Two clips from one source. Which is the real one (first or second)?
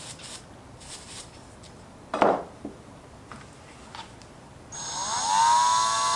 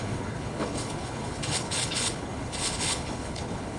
first